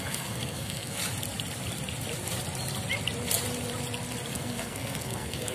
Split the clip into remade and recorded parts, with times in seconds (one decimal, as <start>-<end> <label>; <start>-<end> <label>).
0.0-1.0 remade; 1.0-4.3 recorded; 4.3-5.5 remade